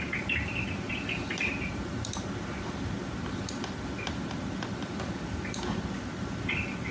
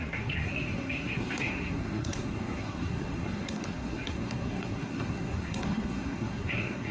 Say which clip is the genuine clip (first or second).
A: first